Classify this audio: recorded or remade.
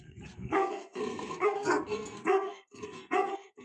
remade